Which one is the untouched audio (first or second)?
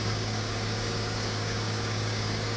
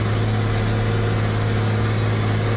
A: second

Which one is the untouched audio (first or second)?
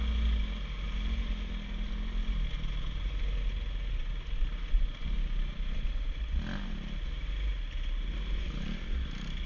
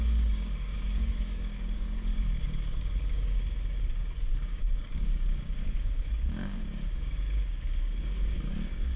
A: first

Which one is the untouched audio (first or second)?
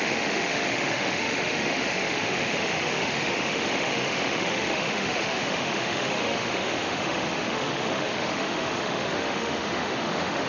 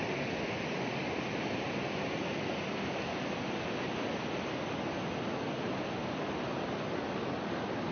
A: second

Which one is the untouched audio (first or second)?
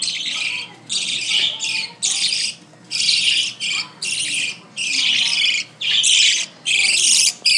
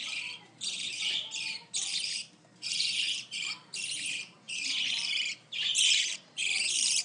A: first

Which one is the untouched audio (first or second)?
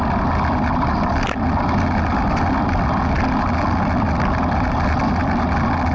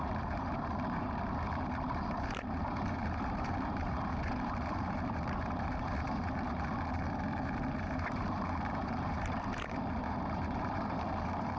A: first